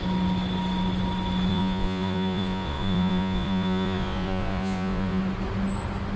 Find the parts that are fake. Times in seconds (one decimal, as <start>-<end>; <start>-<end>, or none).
1.5-5.2